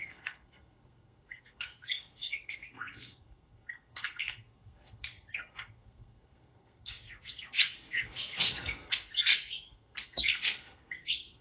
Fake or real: fake